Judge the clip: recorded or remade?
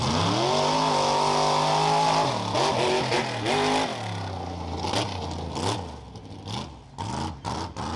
recorded